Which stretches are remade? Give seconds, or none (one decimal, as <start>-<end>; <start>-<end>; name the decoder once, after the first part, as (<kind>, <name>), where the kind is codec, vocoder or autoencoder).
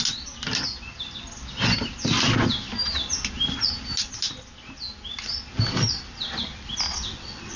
6.9-7.6 (vocoder, WaveNeXt)